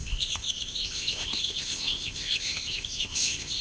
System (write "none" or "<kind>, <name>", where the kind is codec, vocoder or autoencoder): codec, ZipCodec